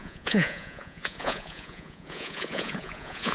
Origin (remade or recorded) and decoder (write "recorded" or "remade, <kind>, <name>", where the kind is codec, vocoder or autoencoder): remade, vocoder, Vocos